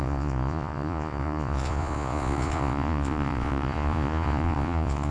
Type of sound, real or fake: fake